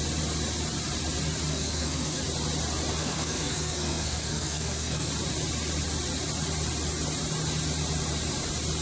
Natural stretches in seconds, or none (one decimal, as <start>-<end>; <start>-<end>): 0.0-1.5; 2.2-3.0; 5.1-8.8